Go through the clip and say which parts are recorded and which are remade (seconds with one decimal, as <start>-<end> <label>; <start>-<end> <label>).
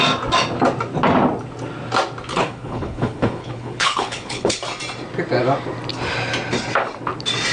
0.0-2.3 recorded; 2.3-4.6 remade; 4.6-7.5 recorded